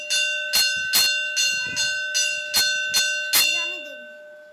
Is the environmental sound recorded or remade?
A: recorded